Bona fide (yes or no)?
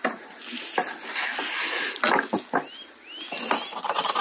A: yes